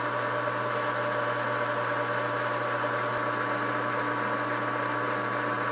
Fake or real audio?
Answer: real